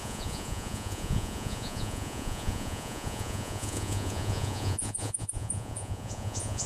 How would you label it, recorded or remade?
remade